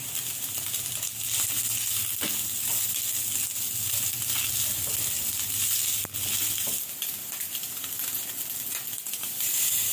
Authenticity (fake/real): real